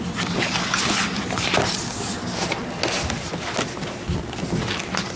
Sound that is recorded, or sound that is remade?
recorded